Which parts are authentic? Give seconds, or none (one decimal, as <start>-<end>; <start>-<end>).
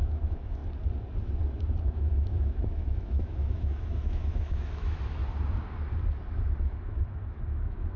0.6-1.8; 5.2-6.3